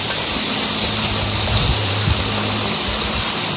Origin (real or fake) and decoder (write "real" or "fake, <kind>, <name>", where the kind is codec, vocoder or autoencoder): fake, vocoder, BigVGAN v2